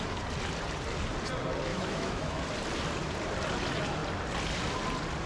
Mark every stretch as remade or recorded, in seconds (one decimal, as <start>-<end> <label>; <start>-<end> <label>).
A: 0.0-1.7 recorded; 1.7-2.4 remade; 2.4-5.3 recorded

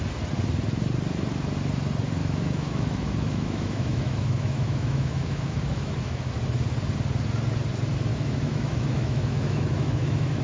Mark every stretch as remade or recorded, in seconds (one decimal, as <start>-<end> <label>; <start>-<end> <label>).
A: 0.0-2.2 recorded; 2.2-6.3 remade; 6.3-8.1 recorded; 8.1-10.4 remade